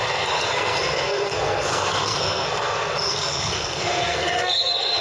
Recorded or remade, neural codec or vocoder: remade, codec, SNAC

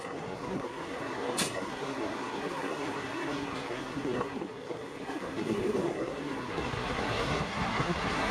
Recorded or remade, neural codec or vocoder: remade, codec, SNAC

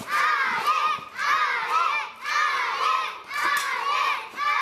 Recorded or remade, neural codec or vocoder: recorded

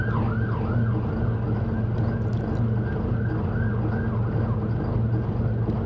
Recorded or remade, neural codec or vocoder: recorded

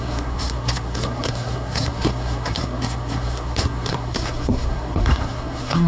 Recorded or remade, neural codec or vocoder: remade, codec, SNAC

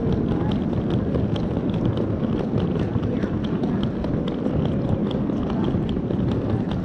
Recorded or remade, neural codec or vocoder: recorded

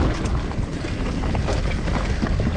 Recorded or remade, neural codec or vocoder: recorded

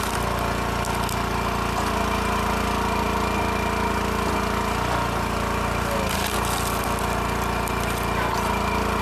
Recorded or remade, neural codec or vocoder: recorded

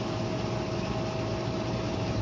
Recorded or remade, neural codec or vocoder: recorded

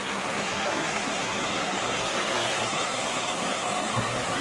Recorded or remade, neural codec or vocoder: remade, codec, SNAC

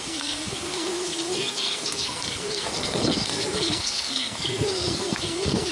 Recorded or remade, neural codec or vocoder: remade, codec, SNAC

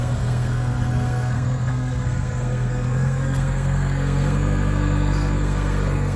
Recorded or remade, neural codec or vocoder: remade, codec, SNAC